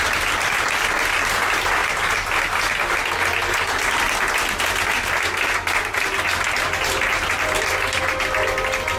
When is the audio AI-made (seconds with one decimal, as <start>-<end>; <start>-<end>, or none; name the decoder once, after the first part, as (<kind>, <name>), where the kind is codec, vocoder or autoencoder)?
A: none